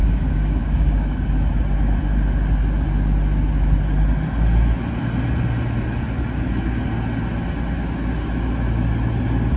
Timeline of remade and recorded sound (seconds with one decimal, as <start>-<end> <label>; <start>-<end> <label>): 0.0-1.3 remade; 1.3-9.6 recorded